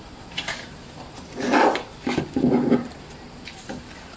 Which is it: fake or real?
real